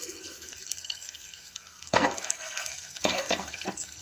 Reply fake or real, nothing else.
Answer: fake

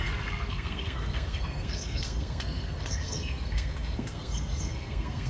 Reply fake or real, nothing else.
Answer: fake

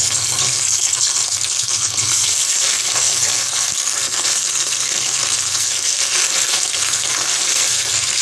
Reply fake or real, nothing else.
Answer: fake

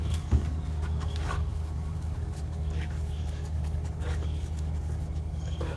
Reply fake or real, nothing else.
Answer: fake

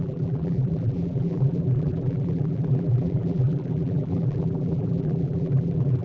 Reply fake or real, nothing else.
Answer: fake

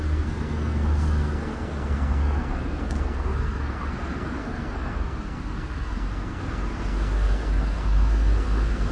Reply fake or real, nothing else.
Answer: fake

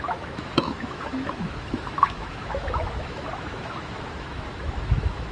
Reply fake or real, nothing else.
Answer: fake